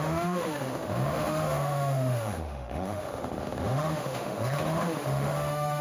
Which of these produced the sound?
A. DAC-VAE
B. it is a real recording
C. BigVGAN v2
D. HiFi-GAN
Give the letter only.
A